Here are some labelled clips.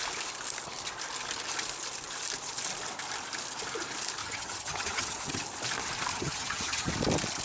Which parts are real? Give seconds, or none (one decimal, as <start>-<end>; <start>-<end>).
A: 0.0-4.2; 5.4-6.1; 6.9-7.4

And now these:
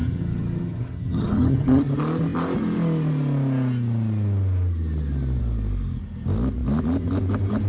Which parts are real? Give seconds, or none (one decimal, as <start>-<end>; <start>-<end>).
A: 1.8-7.7

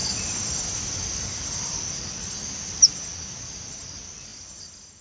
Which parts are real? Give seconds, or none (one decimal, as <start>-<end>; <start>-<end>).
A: 0.0-5.0

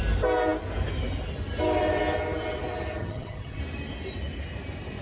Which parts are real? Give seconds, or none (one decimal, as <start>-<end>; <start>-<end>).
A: 0.0-3.0; 3.6-5.0